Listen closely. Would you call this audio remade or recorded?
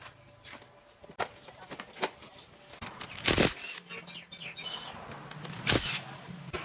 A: recorded